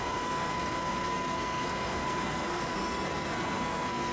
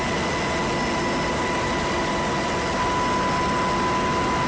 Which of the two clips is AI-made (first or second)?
first